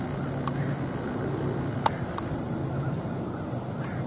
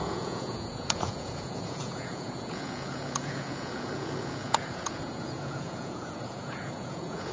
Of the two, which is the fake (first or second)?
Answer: second